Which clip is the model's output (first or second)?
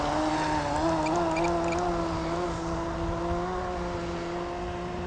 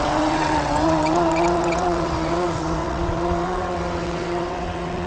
second